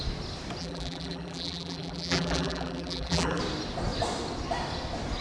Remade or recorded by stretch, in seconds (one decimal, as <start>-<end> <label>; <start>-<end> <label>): 0.0-0.6 recorded; 0.6-3.4 remade; 3.4-5.2 recorded